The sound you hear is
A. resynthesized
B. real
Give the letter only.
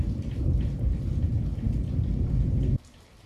A